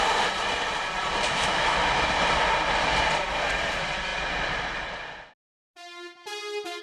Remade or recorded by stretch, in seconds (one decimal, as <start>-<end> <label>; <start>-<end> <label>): 0.0-1.3 recorded; 1.3-2.0 remade; 2.0-6.8 recorded